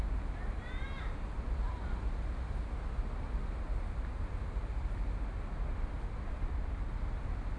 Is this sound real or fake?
real